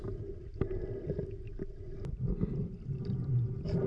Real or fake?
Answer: real